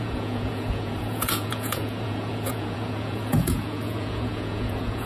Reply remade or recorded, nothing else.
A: remade